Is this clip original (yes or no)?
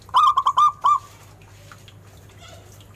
yes